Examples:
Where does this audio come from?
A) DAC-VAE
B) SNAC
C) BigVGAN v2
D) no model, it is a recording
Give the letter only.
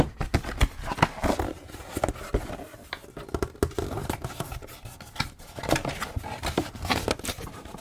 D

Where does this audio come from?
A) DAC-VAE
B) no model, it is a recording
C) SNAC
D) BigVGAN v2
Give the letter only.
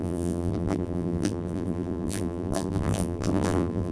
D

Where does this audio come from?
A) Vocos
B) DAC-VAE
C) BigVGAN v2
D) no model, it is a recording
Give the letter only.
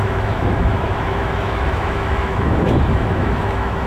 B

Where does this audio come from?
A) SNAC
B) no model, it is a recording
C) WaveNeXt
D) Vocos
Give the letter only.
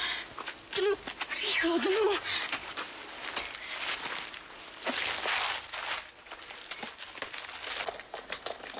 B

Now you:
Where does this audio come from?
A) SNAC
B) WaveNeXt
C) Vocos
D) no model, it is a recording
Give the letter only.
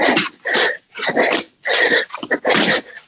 D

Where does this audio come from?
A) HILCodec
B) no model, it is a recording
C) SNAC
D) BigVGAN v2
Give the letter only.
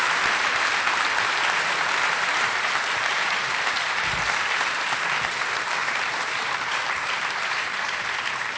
D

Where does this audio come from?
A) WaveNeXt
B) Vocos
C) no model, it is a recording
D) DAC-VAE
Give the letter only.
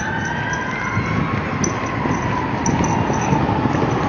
C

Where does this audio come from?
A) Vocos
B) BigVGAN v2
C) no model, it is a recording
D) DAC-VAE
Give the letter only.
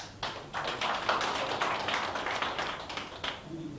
C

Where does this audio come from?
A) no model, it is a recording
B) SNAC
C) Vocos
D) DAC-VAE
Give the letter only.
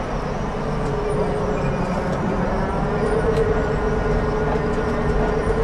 A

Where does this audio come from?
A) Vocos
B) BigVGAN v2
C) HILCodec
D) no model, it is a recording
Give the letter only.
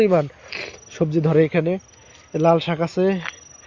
D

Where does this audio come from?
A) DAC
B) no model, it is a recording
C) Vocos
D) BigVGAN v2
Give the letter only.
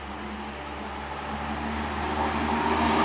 B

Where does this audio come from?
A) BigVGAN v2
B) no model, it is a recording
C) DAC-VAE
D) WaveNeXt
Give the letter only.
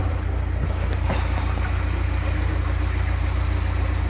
B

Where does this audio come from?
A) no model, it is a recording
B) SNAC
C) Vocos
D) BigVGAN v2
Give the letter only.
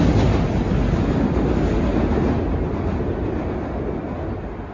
A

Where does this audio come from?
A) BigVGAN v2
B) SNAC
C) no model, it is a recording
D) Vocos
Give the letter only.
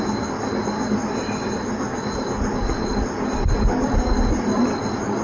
C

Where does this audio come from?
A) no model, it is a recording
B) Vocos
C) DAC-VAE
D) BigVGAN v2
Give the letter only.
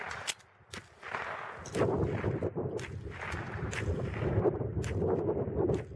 A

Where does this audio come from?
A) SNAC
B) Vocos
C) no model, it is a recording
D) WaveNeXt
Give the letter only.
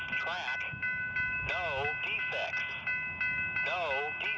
C